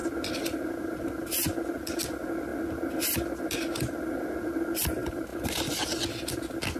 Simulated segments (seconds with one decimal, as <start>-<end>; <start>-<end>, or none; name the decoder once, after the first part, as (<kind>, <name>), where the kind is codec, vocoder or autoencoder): none